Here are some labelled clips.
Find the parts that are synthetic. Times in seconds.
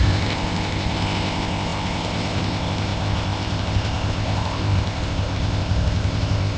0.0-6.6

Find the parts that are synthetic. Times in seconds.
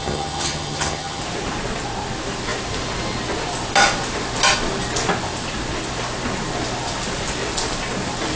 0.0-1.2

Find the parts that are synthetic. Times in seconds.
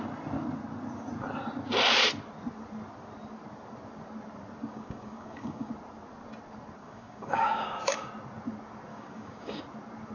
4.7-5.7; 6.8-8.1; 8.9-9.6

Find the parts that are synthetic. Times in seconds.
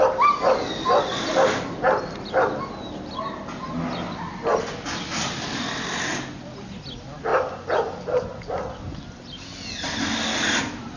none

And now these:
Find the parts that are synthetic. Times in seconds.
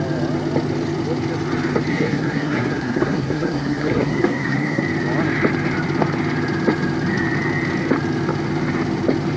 1.9-4.8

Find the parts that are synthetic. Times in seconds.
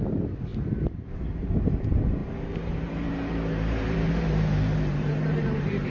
0.0-0.5; 1.3-5.9